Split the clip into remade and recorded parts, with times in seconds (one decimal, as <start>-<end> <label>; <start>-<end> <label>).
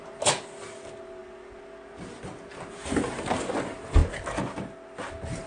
0.0-5.5 recorded